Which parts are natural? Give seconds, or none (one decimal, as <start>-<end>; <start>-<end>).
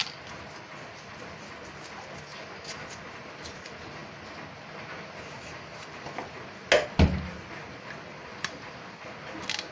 0.0-9.7